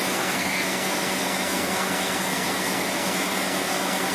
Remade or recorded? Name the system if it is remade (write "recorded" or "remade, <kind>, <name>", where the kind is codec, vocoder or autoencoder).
remade, codec, SNAC